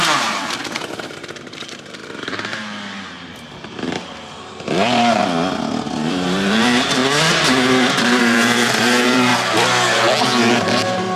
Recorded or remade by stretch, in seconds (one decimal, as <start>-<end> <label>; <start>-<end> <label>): 0.0-5.2 remade; 5.2-6.1 recorded; 6.1-9.3 remade; 9.3-10.2 recorded; 10.2-11.2 remade

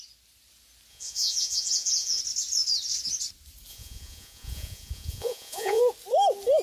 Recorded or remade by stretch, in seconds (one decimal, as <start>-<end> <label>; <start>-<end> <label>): 0.0-0.9 recorded; 0.9-2.2 remade; 2.2-3.7 recorded; 3.7-5.8 remade; 5.8-6.6 recorded

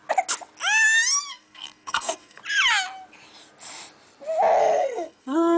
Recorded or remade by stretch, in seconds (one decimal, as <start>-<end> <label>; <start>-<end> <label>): 0.0-1.3 recorded; 1.3-2.4 remade; 2.4-4.6 recorded; 4.6-5.6 remade